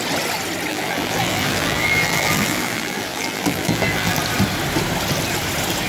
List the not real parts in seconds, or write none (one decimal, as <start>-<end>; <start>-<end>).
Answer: 0.7-4.2